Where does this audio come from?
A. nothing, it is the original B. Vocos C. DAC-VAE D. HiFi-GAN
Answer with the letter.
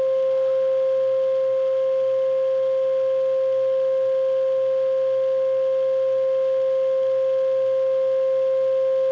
A